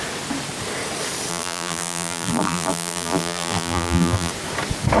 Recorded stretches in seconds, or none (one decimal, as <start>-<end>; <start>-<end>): 0.0-1.3; 4.3-5.0